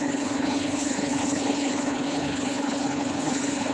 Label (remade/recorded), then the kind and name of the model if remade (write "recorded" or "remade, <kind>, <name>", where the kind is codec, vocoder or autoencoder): remade, codec, HILCodec